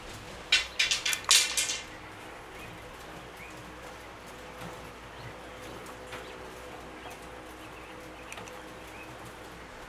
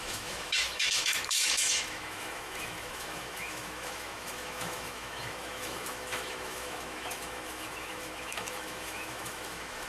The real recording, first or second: first